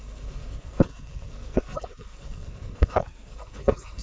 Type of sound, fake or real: fake